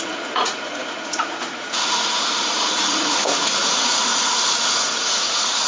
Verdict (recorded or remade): remade